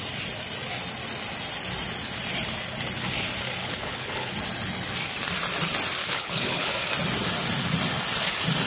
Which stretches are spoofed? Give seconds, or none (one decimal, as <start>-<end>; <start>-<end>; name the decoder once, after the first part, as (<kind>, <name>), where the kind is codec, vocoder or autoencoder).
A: 3.6-4.3 (codec, HILCodec); 6.0-6.7